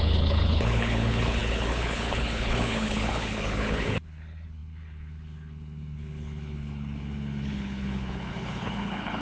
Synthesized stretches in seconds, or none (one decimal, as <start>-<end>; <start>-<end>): 0.0-9.2